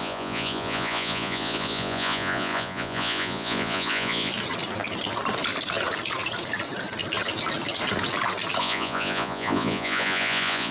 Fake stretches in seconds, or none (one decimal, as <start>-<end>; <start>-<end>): 0.0-4.3; 8.6-10.7